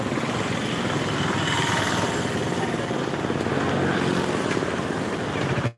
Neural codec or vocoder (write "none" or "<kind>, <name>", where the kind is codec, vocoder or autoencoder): none